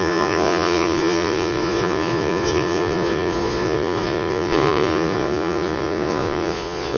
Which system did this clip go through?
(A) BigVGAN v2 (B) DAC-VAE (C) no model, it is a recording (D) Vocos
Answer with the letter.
D